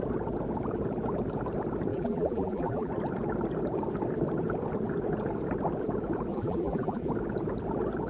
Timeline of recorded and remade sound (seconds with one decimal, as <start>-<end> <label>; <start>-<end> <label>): 0.0-1.9 recorded; 1.9-2.9 remade; 2.9-6.3 recorded; 6.3-7.1 remade; 7.1-8.1 recorded